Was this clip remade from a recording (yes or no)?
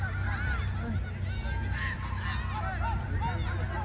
no